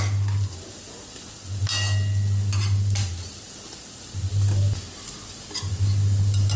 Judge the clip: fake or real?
real